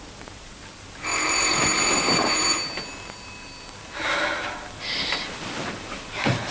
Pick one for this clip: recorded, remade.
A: recorded